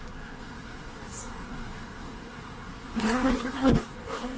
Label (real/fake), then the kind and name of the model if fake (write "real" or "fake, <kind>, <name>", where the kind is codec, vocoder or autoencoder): fake, codec, SNAC